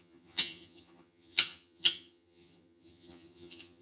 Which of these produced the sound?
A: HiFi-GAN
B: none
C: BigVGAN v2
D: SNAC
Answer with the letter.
A